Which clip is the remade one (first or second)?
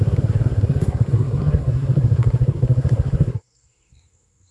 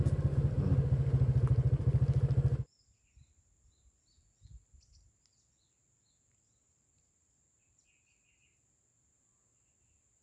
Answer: first